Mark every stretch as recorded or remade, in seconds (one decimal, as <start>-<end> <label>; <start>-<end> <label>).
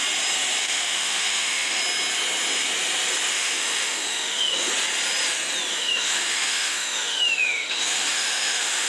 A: 0.0-0.6 recorded; 0.6-1.8 remade; 1.8-3.3 recorded; 3.3-4.7 remade; 4.7-5.7 recorded; 5.7-8.9 remade